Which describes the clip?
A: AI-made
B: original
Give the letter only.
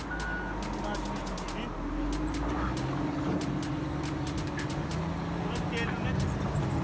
B